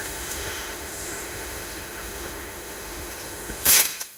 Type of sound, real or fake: fake